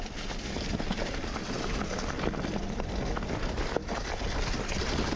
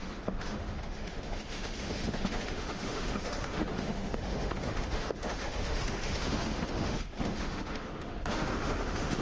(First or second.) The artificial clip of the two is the second